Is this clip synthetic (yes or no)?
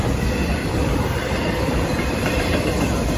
yes